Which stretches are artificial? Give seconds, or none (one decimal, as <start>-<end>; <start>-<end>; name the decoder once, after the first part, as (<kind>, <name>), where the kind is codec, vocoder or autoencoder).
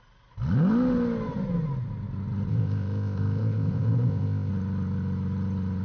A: 2.5-4.5 (codec, ZipCodec)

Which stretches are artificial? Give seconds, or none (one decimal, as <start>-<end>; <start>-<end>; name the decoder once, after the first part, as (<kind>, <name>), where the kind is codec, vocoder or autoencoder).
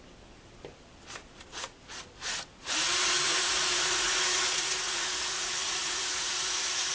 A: 2.5-6.9 (vocoder, Vocos)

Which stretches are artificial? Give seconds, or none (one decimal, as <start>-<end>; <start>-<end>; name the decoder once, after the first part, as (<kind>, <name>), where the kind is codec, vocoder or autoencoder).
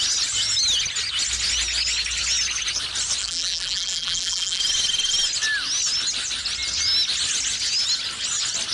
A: 3.2-4.6 (vocoder, BigVGAN v2)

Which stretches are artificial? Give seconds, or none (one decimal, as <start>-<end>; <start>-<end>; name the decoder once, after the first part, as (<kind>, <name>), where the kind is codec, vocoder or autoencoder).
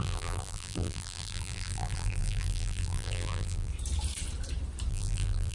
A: 0.0-3.7 (vocoder, BigVGAN v2); 4.9-5.5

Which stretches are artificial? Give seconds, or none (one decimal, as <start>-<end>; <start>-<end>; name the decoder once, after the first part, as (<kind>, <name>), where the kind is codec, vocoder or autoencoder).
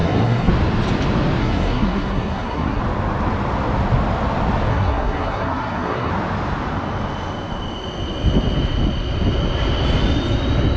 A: 0.0-0.5 (codec, SNAC); 1.4-2.8; 4.7-6.1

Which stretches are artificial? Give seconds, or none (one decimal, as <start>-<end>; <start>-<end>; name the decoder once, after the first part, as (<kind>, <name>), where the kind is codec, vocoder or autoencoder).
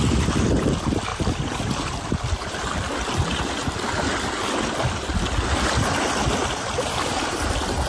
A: 1.1-2.1 (vocoder, BigVGAN v2); 6.4-7.5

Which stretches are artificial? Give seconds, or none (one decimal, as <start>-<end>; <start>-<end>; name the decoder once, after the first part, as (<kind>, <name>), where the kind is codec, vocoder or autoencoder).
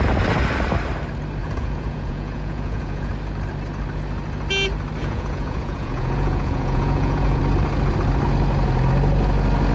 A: 1.4-3.1 (vocoder, Vocos); 5.0-7.4